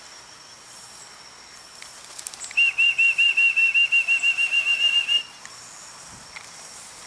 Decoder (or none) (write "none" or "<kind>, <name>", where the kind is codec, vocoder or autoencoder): none